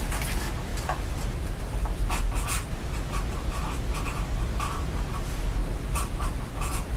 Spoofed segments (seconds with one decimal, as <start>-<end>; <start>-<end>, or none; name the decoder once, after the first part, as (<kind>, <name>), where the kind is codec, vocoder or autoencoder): 5.6-6.4 (vocoder, BigVGAN v2)